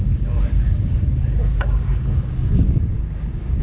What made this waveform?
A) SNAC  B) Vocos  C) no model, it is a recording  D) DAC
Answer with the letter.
D